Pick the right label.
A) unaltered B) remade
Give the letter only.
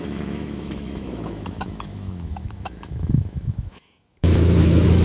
B